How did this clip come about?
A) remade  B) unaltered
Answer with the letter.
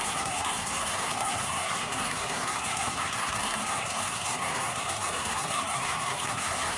A